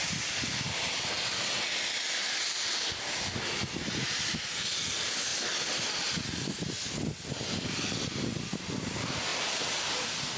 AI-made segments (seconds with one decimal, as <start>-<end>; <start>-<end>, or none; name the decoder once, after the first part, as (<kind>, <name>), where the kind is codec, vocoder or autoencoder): 9.3-10.4 (vocoder, BigVGAN v2)